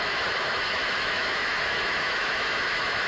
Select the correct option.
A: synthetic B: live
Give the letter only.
A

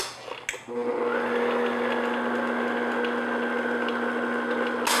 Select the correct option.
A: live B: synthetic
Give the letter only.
A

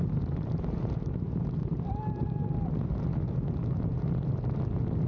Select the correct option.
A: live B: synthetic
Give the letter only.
A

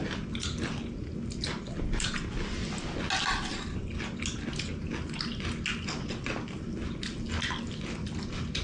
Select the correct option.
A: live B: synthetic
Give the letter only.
A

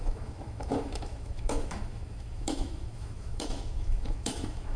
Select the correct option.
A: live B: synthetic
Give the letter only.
B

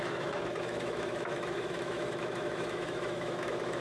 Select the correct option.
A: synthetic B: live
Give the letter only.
A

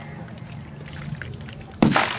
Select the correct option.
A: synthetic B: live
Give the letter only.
B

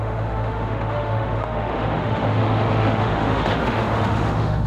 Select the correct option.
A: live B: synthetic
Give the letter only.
B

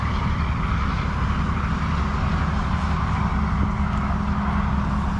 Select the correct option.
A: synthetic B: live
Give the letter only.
B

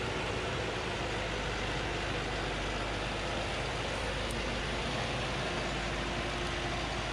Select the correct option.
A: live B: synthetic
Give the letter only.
A